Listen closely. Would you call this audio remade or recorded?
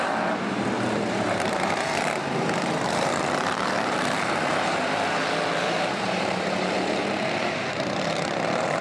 remade